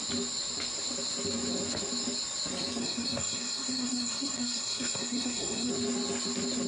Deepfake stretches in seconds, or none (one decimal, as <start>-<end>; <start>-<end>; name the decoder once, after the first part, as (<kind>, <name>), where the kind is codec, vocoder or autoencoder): 2.8-5.7 (codec, SNAC)